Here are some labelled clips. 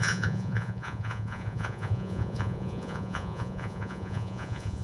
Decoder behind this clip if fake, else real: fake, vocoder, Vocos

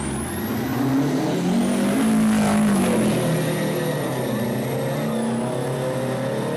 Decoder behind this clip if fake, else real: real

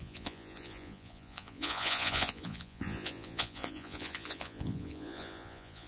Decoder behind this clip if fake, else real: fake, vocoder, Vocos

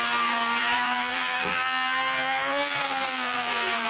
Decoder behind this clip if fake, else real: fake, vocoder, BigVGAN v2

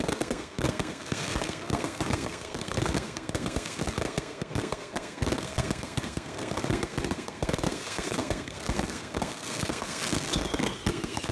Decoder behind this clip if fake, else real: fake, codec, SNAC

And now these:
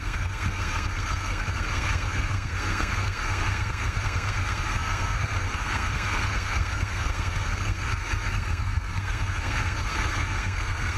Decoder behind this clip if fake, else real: fake, codec, SNAC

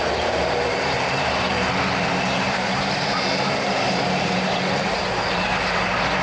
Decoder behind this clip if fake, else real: fake, vocoder, BigVGAN v2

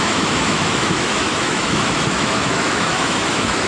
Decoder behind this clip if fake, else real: fake, autoencoder, DAC-VAE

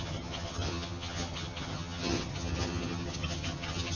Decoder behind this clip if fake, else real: fake, vocoder, HiFi-GAN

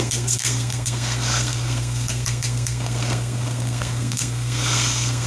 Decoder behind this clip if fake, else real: fake, codec, SNAC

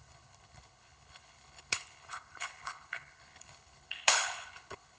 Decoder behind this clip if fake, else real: fake, codec, HILCodec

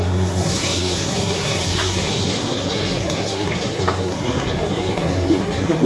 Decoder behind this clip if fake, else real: fake, codec, SNAC